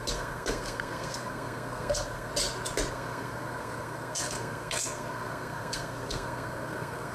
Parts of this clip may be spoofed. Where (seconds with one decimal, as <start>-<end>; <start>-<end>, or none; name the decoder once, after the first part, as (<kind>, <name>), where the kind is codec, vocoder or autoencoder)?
0.0-2.3 (codec, SNAC); 2.9-7.1

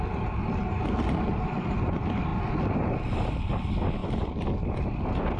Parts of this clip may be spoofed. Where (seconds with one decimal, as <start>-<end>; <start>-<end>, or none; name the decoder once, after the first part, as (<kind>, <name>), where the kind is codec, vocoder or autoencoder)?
none

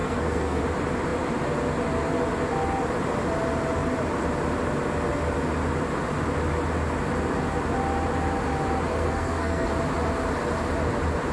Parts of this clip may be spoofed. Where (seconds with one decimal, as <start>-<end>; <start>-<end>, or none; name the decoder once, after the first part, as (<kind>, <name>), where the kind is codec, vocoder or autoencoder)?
0.0-0.6 (codec, SNAC); 8.9-9.7

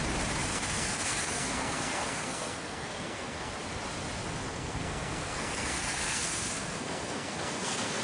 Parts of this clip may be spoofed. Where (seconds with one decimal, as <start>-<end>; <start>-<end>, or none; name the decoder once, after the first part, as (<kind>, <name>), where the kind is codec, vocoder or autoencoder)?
0.4-3.5 (codec, SNAC); 4.5-8.0

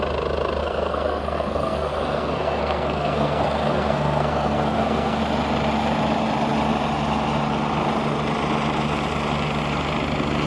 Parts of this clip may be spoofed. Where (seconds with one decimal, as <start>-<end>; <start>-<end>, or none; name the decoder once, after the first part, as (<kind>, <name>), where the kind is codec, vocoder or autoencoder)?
0.6-5.2 (codec, SNAC)

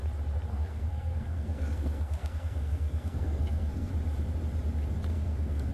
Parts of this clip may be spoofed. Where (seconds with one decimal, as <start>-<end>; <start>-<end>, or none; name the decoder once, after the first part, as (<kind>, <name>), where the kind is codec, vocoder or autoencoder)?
0.5-3.9 (codec, SNAC); 5.1-5.7

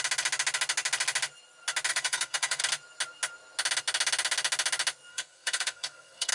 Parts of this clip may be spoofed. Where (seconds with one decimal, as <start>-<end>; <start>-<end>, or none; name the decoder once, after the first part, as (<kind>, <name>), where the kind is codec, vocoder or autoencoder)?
1.9-2.6 (codec, SNAC); 5.1-6.3

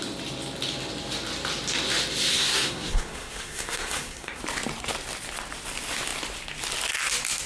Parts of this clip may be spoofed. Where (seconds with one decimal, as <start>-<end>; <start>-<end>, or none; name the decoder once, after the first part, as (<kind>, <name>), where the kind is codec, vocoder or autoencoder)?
2.3-4.4 (codec, SNAC)